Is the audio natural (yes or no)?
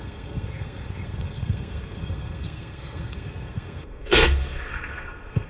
no